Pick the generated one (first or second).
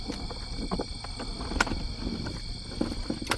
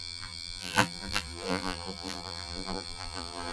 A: second